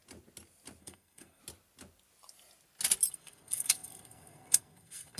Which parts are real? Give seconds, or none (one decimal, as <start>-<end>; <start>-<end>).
0.0-0.8; 1.4-3.1